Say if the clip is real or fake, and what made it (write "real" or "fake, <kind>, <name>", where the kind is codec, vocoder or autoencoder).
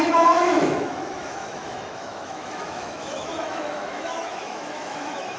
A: fake, autoencoder, DAC-VAE